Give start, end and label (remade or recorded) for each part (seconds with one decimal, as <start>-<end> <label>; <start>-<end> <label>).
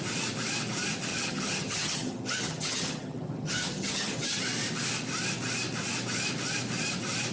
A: 0.0-1.1 recorded; 1.1-4.4 remade; 4.4-7.3 recorded